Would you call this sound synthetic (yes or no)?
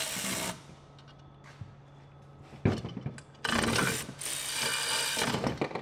no